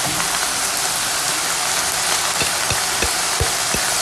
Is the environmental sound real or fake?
real